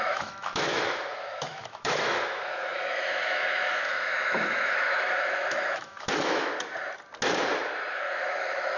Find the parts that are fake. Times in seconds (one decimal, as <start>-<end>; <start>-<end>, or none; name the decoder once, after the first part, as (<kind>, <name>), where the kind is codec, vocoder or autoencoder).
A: 0.0-6.5 (autoencoder, DAC-VAE); 7.9-8.8